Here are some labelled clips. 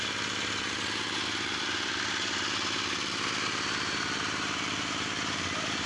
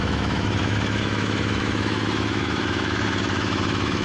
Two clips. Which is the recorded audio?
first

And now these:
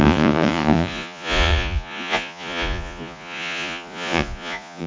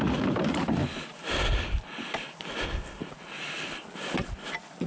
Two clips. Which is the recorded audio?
second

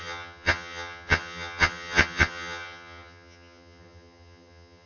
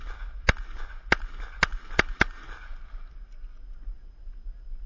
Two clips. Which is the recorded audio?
second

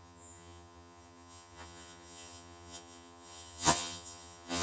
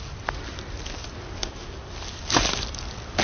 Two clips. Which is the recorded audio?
second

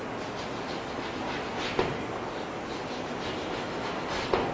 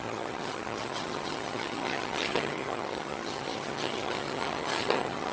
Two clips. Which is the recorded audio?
first